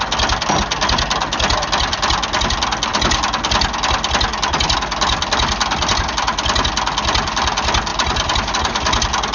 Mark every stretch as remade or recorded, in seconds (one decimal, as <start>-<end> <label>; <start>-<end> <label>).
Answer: 0.0-7.9 recorded; 7.9-8.5 remade; 8.5-9.3 recorded